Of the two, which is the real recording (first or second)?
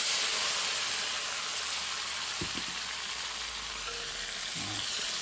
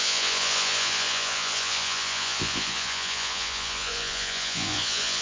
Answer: first